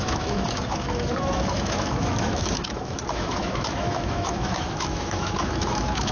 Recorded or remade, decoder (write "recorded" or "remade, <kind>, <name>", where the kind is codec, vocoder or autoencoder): remade, autoencoder, DAC-VAE